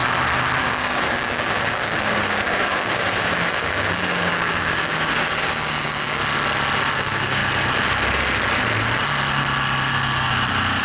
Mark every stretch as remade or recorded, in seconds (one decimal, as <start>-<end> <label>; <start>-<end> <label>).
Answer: 0.0-0.6 recorded; 0.6-6.2 remade; 6.2-6.9 recorded; 6.9-7.4 remade; 7.4-10.8 recorded